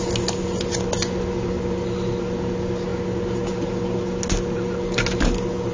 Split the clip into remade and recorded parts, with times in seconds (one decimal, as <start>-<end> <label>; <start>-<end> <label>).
0.0-5.7 recorded